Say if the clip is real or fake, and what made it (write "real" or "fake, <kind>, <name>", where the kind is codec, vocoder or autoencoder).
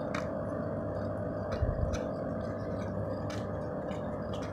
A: real